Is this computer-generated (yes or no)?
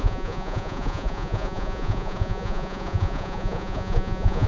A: yes